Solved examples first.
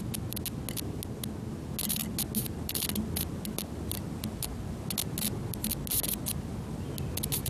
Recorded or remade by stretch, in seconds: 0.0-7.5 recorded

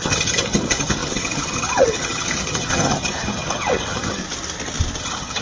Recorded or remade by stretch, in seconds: 0.0-4.2 remade; 4.2-5.0 recorded; 5.0-5.4 remade

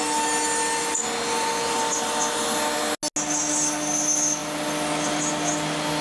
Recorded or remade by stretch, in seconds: 0.0-6.0 recorded

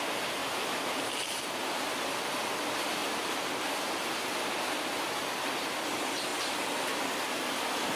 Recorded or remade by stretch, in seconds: 0.0-0.4 recorded; 0.4-1.1 remade; 1.1-3.0 recorded; 3.0-3.5 remade; 3.5-6.3 recorded; 6.3-7.0 remade; 7.0-8.0 recorded

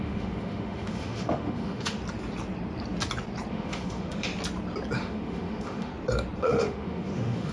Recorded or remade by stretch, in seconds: 0.0-2.0 remade; 2.0-3.5 recorded; 3.5-4.3 remade; 4.3-5.0 recorded; 5.0-5.9 remade; 5.9-6.4 recorded; 6.4-7.5 remade

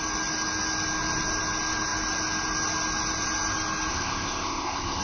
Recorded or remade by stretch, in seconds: 0.0-3.9 recorded; 3.9-5.0 remade